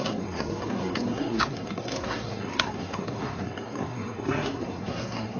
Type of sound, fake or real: fake